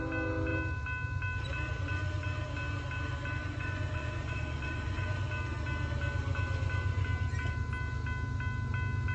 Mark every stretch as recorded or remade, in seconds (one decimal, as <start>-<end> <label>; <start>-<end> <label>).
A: 0.0-3.4 recorded; 3.4-5.2 remade; 5.2-9.1 recorded